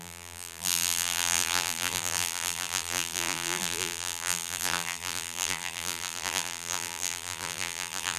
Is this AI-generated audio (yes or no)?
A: yes